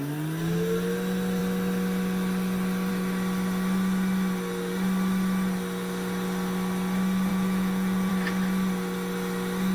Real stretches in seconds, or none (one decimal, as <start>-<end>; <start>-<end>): 0.0-7.3; 8.1-9.7